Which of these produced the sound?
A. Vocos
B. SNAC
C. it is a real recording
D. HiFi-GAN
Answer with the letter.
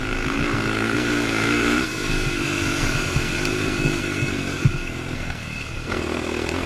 B